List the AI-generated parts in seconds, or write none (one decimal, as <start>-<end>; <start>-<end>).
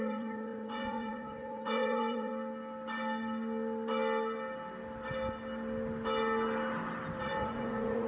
0.0-2.3; 7.2-8.1